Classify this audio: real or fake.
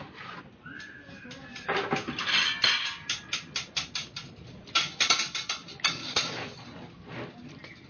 real